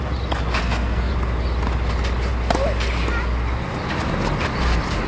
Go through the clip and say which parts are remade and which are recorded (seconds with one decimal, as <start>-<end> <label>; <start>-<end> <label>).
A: 0.0-0.6 recorded; 0.6-1.1 remade; 1.1-5.1 recorded

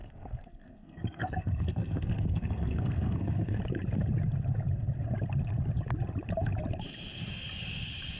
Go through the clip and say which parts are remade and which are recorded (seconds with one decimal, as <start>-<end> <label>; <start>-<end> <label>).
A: 0.0-3.6 remade; 3.6-8.2 recorded

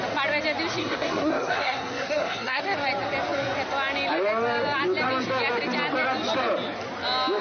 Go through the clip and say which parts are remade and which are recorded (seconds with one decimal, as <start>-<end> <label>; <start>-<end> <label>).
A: 0.0-0.8 recorded; 0.8-2.6 remade; 2.6-7.4 recorded

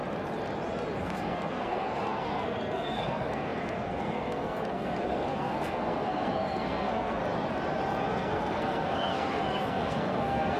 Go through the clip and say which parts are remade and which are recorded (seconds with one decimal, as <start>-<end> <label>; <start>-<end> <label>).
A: 0.0-1.0 recorded; 1.0-7.2 remade; 7.2-8.1 recorded; 8.1-10.6 remade

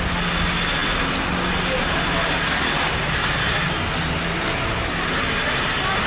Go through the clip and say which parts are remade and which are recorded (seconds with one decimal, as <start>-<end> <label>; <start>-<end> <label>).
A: 0.0-6.1 recorded

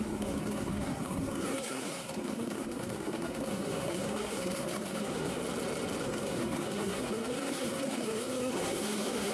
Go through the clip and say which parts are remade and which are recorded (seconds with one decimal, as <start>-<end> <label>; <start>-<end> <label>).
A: 0.0-5.4 remade; 5.4-6.0 recorded; 6.0-9.3 remade

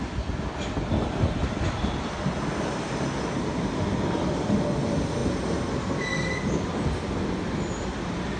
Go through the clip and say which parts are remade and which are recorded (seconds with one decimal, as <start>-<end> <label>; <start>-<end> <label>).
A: 0.0-8.4 recorded